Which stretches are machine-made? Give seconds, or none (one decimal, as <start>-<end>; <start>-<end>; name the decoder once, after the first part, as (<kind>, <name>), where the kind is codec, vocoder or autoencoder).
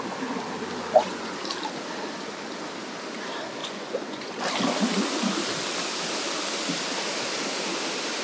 0.8-1.3 (vocoder, Vocos); 3.6-4.3